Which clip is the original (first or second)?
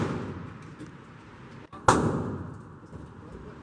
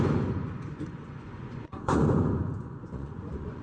first